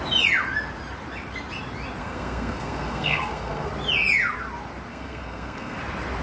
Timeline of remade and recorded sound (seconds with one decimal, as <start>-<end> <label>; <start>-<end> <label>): 0.0-2.0 recorded; 2.0-3.7 remade; 3.7-4.9 recorded; 4.9-5.8 remade; 5.8-6.2 recorded

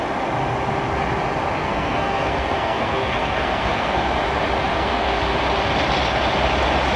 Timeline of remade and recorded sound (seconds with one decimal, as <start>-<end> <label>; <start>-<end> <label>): 0.0-1.6 recorded; 1.6-4.1 remade; 4.1-4.7 recorded; 4.7-5.2 remade; 5.2-7.0 recorded